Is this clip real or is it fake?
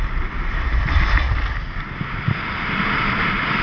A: real